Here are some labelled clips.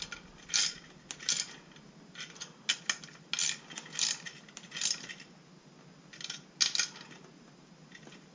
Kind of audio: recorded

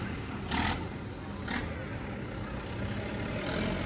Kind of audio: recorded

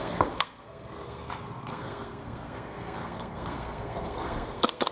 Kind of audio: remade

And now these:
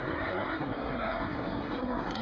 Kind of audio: remade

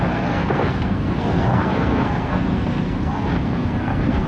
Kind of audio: remade